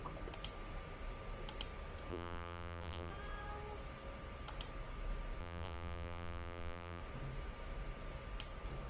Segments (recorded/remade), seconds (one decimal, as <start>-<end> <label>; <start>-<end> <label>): 0.0-2.1 recorded; 2.1-3.1 remade; 3.1-5.4 recorded; 5.4-7.0 remade; 7.0-8.9 recorded